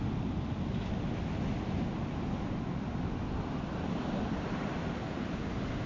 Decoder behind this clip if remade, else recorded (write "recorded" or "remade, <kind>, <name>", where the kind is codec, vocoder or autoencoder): recorded